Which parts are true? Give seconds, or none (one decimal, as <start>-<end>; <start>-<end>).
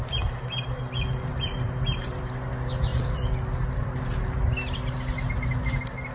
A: 0.0-1.3; 2.5-6.1